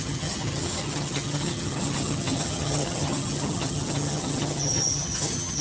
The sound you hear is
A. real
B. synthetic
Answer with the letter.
B